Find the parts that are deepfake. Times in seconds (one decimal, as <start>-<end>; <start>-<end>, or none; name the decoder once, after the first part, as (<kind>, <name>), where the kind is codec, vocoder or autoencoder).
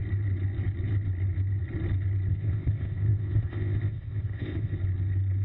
2.3-4.8 (codec, ZipCodec)